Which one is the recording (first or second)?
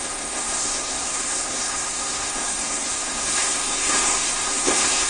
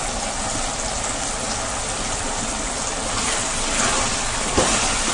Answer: second